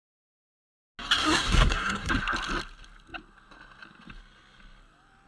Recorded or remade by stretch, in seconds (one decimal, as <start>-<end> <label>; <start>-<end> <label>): 0.0-1.2 recorded; 1.2-2.1 remade; 2.1-5.3 recorded

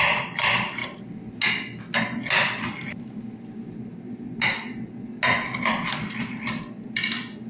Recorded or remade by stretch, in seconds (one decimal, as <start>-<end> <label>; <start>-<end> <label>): 0.0-7.5 recorded

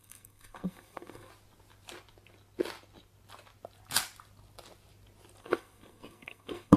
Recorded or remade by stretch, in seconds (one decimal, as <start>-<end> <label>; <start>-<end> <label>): 0.0-1.3 remade; 1.3-5.4 recorded; 5.4-6.8 remade

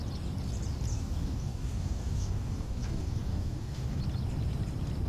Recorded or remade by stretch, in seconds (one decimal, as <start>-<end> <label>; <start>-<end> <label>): 0.0-0.9 recorded; 0.9-4.0 remade; 4.0-5.1 recorded

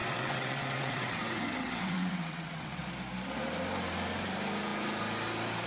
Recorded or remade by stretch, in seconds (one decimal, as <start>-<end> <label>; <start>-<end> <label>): 0.0-2.8 remade; 2.8-5.7 recorded

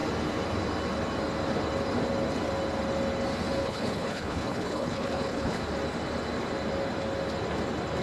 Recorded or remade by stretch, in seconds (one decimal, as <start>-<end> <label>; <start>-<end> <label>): 0.0-3.6 recorded; 3.6-5.6 remade; 5.6-8.0 recorded

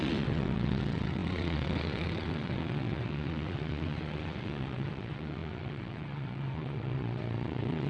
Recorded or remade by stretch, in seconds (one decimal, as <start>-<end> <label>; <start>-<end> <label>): 0.0-7.9 remade